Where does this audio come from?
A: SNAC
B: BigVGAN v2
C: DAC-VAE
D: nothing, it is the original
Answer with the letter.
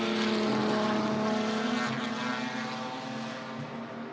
D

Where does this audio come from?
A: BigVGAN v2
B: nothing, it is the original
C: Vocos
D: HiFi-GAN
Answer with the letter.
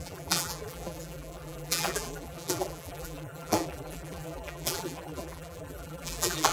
A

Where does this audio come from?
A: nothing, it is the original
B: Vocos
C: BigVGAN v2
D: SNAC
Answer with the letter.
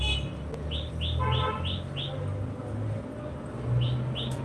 A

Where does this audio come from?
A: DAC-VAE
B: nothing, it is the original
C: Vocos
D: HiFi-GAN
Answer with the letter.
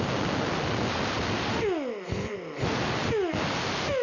B